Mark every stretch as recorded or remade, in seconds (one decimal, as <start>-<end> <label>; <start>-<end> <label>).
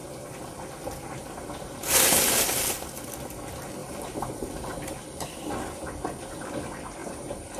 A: 0.0-3.8 recorded; 3.8-5.4 remade; 5.4-7.0 recorded; 7.0-7.6 remade